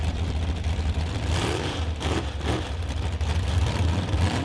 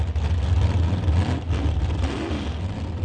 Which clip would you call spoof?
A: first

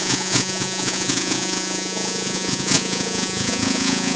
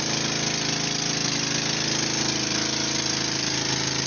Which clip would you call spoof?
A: first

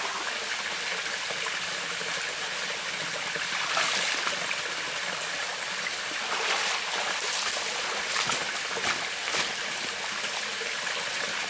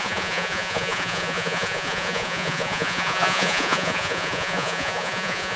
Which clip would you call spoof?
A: second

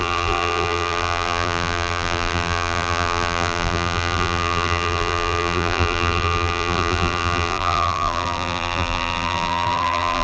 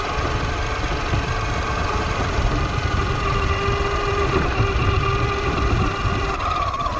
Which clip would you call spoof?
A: first